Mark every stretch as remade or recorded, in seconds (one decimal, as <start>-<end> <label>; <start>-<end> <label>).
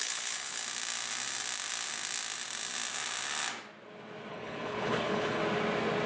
0.0-0.6 remade; 0.6-4.3 recorded; 4.3-5.4 remade; 5.4-6.1 recorded